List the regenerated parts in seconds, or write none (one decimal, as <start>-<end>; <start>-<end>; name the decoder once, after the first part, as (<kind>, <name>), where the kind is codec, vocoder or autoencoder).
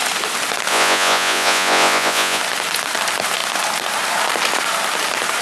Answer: 0.7-2.4 (vocoder, Vocos)